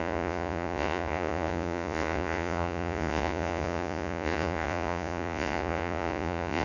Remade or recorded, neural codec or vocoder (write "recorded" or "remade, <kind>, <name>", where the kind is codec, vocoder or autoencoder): remade, vocoder, Vocos